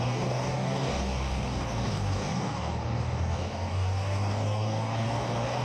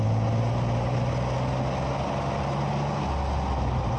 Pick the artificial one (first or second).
first